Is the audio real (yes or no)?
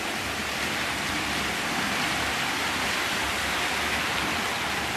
yes